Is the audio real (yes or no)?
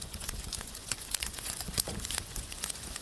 no